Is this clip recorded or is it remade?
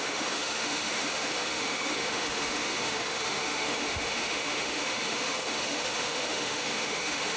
remade